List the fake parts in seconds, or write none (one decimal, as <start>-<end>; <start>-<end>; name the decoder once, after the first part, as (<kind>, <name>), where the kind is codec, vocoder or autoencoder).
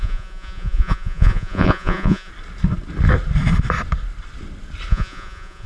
0.0-2.3 (vocoder, Vocos); 4.9-5.7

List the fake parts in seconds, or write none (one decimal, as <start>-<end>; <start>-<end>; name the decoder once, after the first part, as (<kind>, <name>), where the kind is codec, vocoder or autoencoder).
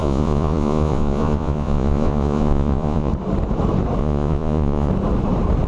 0.0-3.1 (vocoder, Vocos); 4.0-4.9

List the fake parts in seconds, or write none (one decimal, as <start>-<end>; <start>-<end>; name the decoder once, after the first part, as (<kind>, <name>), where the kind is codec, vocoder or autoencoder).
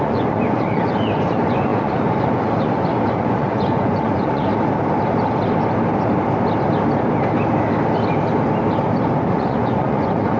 0.0-4.5 (vocoder, Vocos); 9.2-10.4